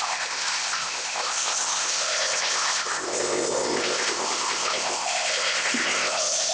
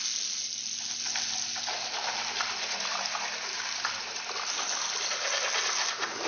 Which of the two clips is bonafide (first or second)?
second